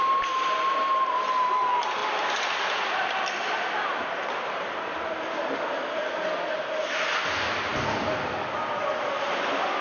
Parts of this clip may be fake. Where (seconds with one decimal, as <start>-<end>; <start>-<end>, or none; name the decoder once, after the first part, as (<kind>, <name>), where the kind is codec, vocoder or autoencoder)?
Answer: none